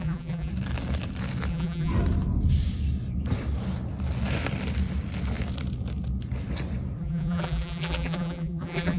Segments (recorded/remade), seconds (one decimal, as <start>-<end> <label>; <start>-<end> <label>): 0.0-0.5 remade; 0.5-1.5 recorded; 1.5-1.9 remade; 1.9-7.0 recorded; 7.0-9.0 remade